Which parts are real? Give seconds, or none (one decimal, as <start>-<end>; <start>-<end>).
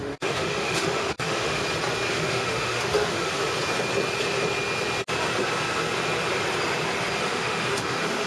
1.6-2.1; 3.3-7.2